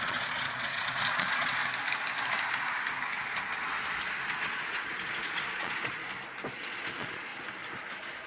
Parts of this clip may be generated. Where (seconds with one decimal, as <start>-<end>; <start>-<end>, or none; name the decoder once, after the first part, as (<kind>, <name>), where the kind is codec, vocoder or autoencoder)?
0.0-1.6 (vocoder, Vocos); 4.3-6.0; 6.5-7.3; 7.9-8.3